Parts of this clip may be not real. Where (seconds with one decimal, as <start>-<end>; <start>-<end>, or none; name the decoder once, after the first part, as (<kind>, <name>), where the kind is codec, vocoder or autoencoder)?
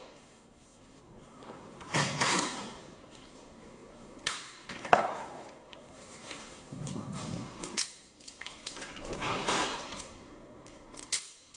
0.0-11.6 (codec, SNAC)